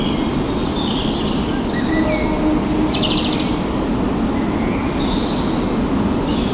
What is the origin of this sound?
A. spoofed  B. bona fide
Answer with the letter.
B